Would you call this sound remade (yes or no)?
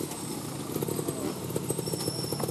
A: no